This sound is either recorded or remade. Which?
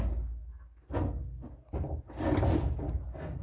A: recorded